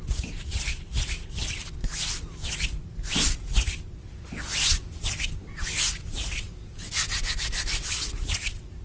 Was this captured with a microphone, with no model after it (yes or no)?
yes